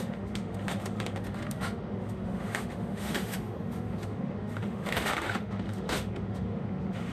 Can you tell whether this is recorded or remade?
remade